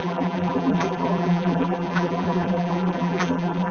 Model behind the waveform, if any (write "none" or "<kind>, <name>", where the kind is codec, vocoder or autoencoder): vocoder, BigVGAN v2